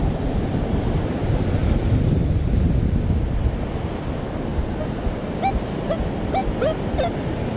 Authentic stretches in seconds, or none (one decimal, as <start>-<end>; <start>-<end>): 1.6-2.8; 4.5-5.9